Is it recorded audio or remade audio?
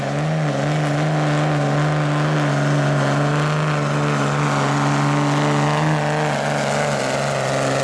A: recorded